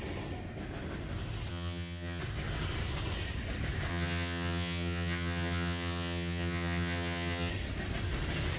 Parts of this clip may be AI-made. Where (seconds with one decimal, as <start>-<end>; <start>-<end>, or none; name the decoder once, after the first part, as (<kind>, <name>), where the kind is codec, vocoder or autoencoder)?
1.5-2.2 (vocoder, HiFi-GAN); 3.9-7.5